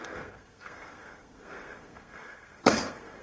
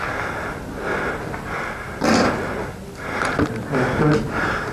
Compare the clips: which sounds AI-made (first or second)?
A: first